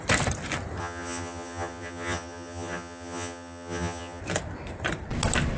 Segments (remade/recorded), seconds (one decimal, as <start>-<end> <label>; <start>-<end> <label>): 0.0-0.8 recorded; 0.8-4.2 remade; 4.2-5.6 recorded